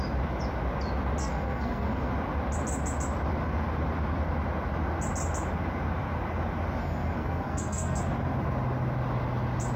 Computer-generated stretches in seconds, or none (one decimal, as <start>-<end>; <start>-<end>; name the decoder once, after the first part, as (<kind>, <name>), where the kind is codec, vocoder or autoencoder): 1.2-2.1 (codec, SNAC); 6.8-8.0